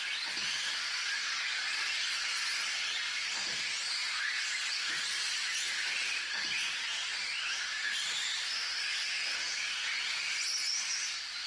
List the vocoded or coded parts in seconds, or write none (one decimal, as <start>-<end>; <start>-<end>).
none